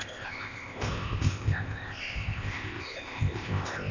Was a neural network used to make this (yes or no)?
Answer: yes